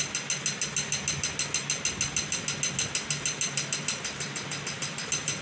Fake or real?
real